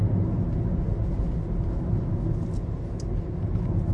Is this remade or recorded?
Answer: recorded